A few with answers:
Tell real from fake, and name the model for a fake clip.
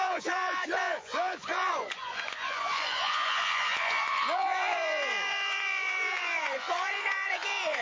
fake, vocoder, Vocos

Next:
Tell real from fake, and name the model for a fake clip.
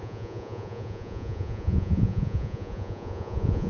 fake, vocoder, Vocos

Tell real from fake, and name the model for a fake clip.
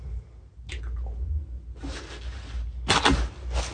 real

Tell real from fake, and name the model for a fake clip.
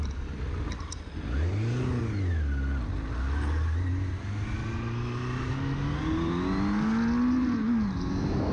real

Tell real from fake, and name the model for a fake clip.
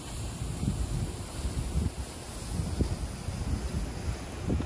real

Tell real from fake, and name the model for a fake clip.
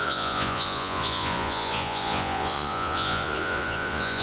fake, vocoder, Vocos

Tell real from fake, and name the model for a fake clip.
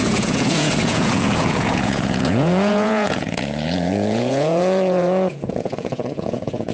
fake, vocoder, Vocos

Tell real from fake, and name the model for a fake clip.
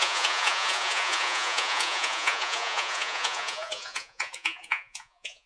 fake, vocoder, Vocos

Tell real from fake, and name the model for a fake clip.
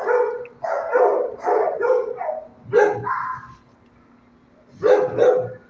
real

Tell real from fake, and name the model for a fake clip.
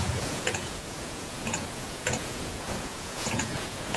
fake, vocoder, Vocos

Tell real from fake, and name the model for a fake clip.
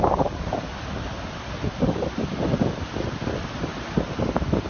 real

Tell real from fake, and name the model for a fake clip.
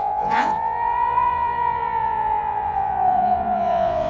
fake, vocoder, Vocos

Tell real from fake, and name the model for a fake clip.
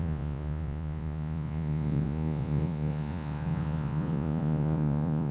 fake, vocoder, Vocos